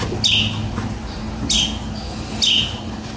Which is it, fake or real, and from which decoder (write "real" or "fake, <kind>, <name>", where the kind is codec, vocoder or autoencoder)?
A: real